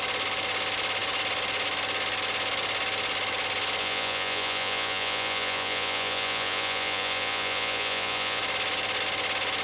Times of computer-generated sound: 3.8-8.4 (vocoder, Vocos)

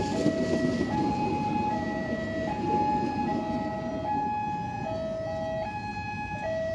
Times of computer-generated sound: none

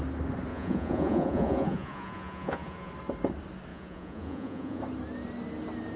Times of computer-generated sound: 0.5-2.9 (vocoder, Vocos); 3.7-4.8

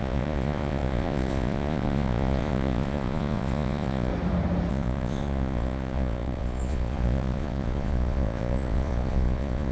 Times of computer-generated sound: 0.0-4.1 (vocoder, Vocos); 4.7-9.7

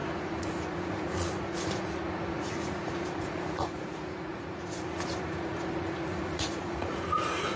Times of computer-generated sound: 0.0-7.6 (vocoder, Vocos)

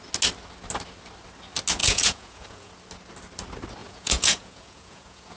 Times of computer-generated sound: 1.8-2.7 (vocoder, Vocos); 3.8-5.4

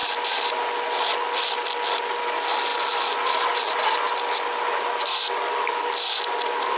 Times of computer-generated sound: none

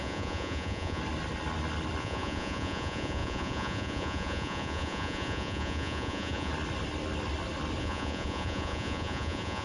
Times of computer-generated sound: 0.0-1.0 (vocoder, Vocos); 2.0-6.5; 7.8-9.6